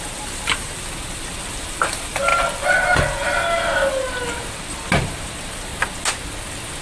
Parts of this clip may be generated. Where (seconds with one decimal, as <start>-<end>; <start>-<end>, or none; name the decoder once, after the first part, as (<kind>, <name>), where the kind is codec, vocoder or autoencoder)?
0.0-2.3 (vocoder, BigVGAN v2); 4.6-5.7